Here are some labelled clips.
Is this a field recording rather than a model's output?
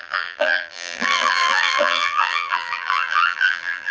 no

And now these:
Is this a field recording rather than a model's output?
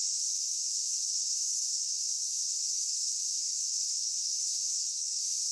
no